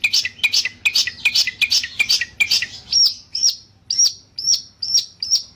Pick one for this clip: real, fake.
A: real